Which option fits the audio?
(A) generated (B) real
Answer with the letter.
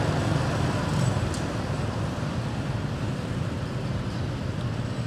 B